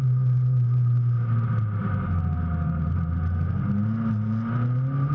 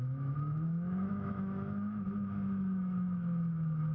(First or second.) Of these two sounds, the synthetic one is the second